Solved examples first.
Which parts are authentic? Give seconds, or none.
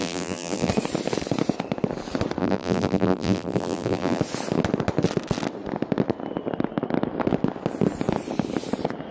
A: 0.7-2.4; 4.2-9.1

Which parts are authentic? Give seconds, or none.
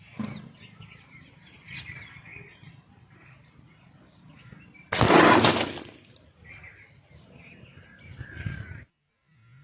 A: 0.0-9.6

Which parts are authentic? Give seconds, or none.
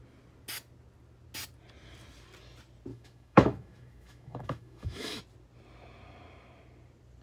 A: 0.0-2.9; 5.2-7.2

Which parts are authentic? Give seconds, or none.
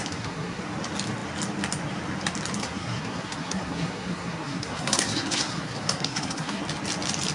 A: 0.6-2.6; 6.6-7.3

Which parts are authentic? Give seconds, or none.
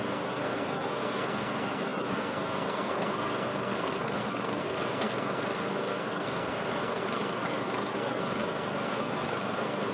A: none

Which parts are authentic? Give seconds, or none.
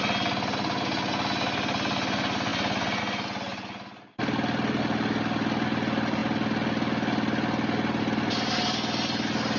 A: 0.0-2.5; 3.0-9.6